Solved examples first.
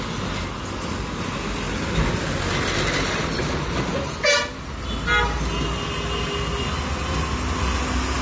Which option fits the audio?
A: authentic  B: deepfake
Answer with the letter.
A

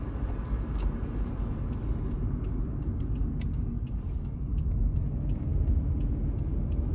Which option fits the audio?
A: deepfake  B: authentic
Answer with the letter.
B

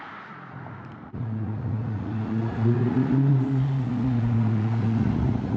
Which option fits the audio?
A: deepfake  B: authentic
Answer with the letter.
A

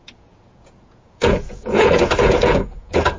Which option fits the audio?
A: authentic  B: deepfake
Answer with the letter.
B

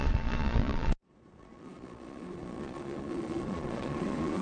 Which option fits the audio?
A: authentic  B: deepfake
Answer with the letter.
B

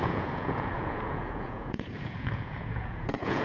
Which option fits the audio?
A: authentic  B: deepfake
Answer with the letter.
B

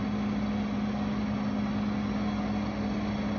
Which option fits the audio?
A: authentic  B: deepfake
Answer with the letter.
A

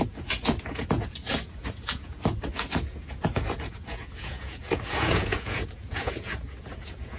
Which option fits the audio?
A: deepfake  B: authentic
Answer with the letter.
A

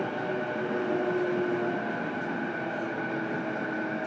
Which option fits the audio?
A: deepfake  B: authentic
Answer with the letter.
B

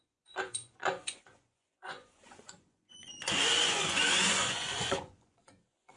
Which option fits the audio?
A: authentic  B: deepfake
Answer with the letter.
B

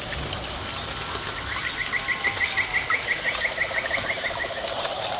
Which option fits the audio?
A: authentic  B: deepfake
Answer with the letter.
A